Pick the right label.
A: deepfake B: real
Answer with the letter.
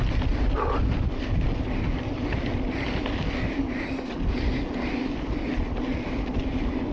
B